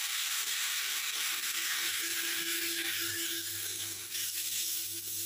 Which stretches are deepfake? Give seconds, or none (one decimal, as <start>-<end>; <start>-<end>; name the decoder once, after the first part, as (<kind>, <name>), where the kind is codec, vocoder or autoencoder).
0.0-5.3 (codec, DAC)